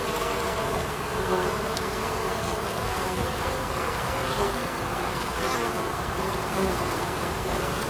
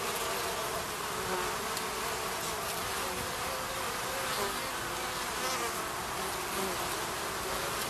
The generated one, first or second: first